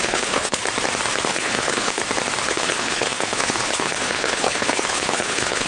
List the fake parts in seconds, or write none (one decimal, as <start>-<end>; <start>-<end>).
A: 0.0-0.6; 1.3-2.0; 2.5-5.7